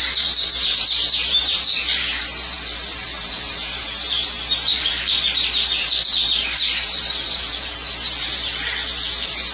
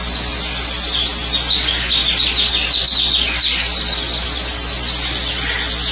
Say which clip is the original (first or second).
second